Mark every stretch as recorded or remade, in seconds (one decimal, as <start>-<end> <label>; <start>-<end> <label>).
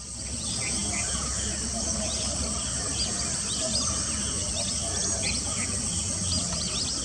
0.0-7.0 recorded